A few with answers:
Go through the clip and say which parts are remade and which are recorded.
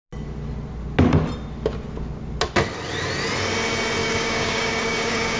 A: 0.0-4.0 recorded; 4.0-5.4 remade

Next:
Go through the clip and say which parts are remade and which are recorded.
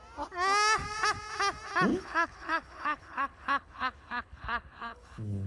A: 0.0-1.9 recorded; 1.9-5.5 remade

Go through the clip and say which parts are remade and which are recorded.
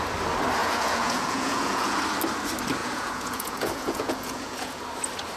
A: 0.0-0.6 recorded; 0.6-2.0 remade; 2.0-2.8 recorded; 2.8-4.8 remade; 4.8-5.4 recorded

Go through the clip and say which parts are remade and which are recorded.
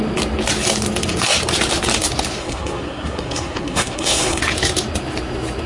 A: 0.0-2.4 recorded; 2.4-4.4 remade; 4.4-5.7 recorded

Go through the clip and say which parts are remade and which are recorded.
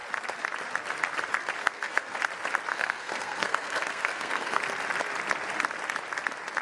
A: 0.0-1.6 recorded; 1.6-2.2 remade; 2.2-2.7 recorded; 2.7-4.6 remade; 4.6-6.6 recorded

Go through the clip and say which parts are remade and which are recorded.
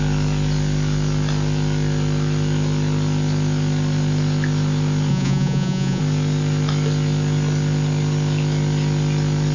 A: 0.0-5.1 recorded; 5.1-6.0 remade; 6.0-9.5 recorded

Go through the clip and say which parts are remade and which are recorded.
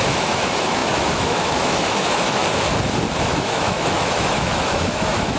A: 0.0-2.4 remade; 2.4-3.2 recorded; 3.2-5.4 remade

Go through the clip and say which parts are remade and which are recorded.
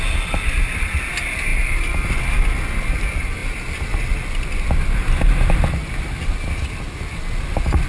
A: 0.0-7.9 recorded